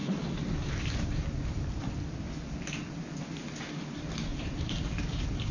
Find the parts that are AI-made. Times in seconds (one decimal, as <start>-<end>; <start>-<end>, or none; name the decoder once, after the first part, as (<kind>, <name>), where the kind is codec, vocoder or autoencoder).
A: 4.3-5.5 (vocoder, BigVGAN v2)